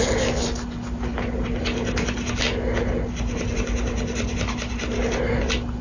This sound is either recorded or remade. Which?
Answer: recorded